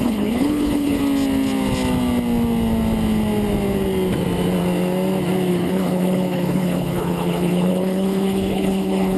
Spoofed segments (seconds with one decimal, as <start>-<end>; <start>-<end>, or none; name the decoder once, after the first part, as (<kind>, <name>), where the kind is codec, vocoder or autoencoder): 0.0-1.0 (codec, HILCodec); 5.5-9.2